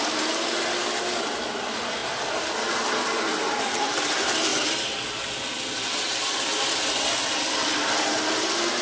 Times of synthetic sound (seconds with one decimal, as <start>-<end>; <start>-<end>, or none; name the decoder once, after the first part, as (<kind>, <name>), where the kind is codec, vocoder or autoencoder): none